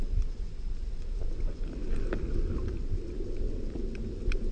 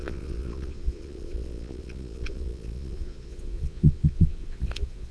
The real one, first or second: first